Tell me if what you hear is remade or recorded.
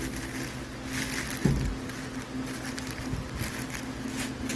recorded